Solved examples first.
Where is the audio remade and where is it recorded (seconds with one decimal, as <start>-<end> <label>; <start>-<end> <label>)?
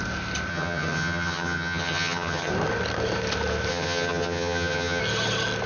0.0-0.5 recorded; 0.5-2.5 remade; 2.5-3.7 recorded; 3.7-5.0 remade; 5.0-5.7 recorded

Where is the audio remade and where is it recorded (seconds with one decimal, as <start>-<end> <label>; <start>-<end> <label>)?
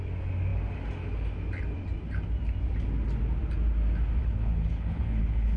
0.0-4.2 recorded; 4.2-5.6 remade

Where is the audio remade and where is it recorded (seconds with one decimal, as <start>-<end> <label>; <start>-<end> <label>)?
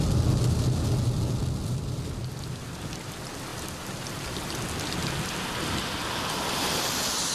0.0-7.3 recorded